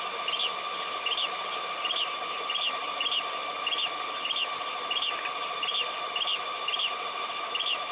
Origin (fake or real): real